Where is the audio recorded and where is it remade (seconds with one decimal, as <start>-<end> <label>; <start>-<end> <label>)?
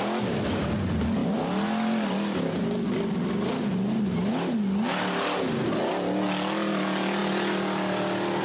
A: 0.0-8.4 recorded